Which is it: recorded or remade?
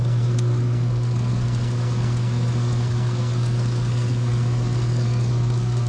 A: remade